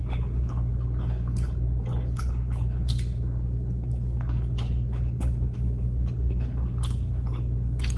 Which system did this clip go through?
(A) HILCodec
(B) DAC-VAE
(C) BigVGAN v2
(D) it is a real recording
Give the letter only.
A